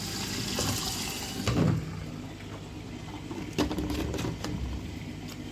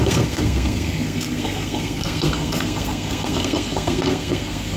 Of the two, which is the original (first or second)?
first